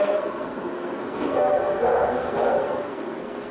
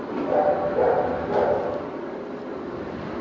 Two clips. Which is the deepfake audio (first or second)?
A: first